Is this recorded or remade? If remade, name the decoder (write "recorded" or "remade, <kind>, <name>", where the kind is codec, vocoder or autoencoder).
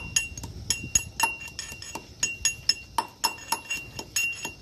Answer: recorded